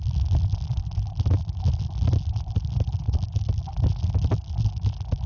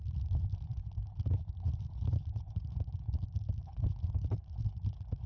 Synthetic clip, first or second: second